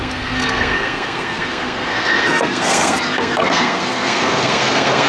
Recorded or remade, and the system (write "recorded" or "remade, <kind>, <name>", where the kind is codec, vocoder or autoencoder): remade, codec, SNAC